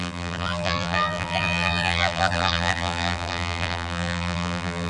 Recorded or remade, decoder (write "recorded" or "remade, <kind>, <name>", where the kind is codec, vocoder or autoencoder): remade, vocoder, BigVGAN v2